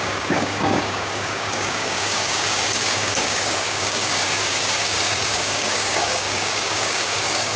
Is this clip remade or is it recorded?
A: remade